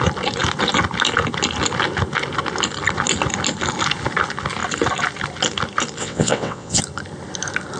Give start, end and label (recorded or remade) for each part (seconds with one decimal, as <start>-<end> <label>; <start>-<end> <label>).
0.0-6.0 recorded; 6.0-6.8 remade; 6.8-7.8 recorded